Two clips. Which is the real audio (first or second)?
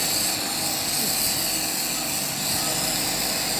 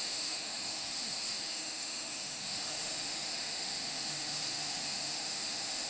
first